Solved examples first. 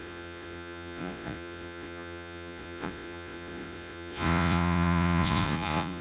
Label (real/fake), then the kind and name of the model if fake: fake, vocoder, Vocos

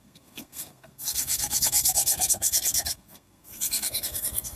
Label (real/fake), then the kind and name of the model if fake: fake, codec, SNAC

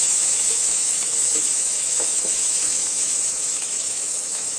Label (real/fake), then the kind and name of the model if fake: fake, autoencoder, DAC-VAE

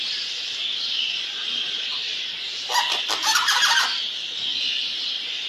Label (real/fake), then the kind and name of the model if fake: real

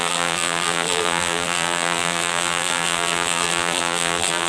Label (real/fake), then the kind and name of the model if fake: fake, vocoder, BigVGAN v2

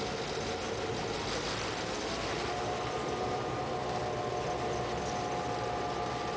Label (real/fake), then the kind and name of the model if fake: real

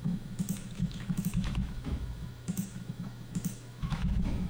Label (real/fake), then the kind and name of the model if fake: fake, autoencoder, DAC-VAE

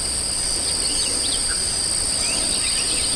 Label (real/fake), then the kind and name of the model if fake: real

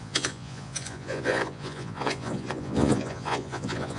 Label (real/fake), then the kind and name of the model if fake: fake, vocoder, Vocos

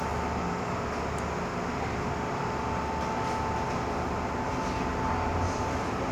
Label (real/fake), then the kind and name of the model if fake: real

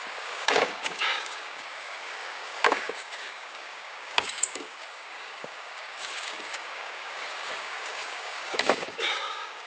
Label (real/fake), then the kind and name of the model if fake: fake, codec, DAC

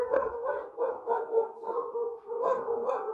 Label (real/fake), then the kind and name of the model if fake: fake, codec, SNAC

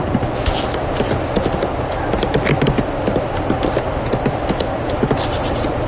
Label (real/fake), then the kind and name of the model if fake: real